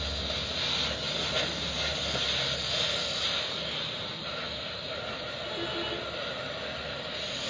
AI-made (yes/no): no